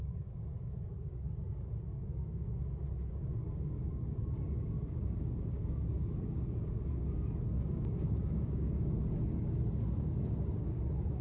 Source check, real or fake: fake